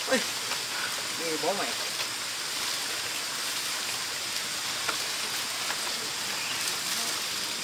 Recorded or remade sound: recorded